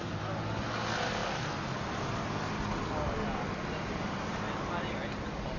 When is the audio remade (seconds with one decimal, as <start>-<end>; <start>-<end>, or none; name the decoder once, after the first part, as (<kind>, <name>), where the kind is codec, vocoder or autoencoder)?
none